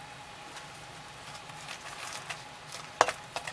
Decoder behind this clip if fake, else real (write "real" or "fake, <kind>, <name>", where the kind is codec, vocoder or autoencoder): real